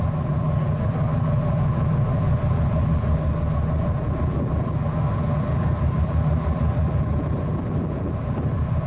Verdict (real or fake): fake